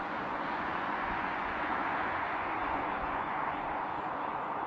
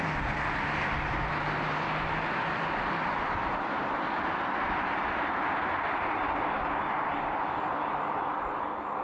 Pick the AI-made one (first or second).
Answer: first